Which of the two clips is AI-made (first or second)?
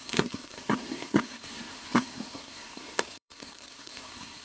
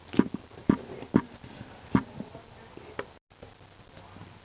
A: first